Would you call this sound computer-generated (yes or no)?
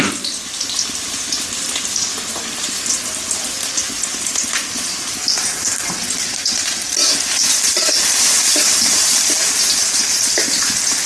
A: yes